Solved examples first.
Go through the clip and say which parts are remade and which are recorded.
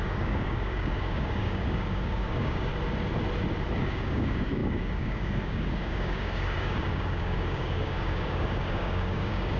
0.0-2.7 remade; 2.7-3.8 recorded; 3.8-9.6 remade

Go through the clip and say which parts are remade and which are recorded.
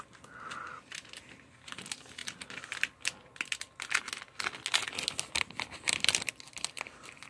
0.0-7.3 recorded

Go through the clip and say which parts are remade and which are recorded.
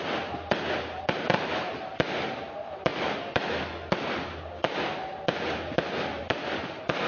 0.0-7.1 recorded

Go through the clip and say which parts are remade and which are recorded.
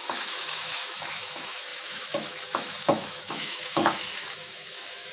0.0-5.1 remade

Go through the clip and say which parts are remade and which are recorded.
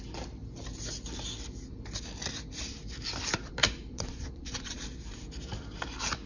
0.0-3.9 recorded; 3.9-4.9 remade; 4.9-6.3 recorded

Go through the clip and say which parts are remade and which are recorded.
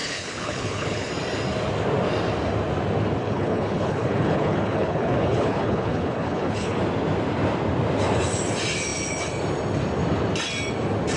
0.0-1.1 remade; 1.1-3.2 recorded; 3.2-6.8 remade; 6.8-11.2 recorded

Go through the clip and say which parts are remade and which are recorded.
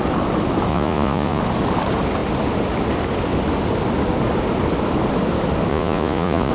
0.0-0.7 recorded; 0.7-1.4 remade; 1.4-5.7 recorded; 5.7-6.5 remade